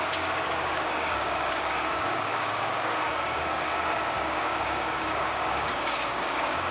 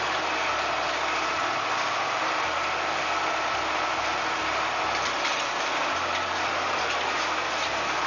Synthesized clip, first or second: first